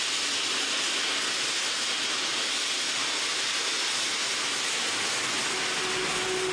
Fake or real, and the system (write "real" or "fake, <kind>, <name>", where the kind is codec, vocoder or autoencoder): real